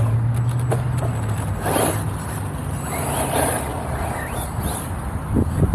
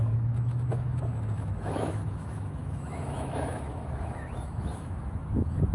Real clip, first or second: first